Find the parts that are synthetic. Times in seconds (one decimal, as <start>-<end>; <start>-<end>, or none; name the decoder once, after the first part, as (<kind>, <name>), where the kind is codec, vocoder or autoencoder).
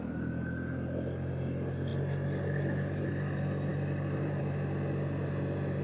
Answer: 3.7-4.4 (vocoder, BigVGAN v2)